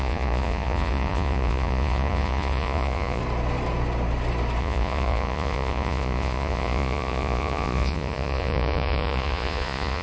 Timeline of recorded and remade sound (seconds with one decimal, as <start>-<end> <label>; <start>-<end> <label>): 0.0-3.2 remade; 3.2-4.6 recorded; 4.6-10.0 remade